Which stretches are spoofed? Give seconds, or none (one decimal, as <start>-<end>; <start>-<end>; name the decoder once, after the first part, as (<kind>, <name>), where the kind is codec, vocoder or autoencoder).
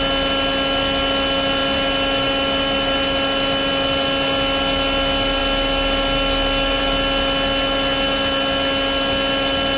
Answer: none